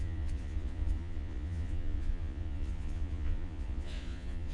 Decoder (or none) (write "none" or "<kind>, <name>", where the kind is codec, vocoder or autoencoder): vocoder, Vocos